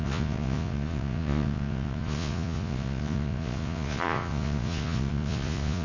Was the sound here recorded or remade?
remade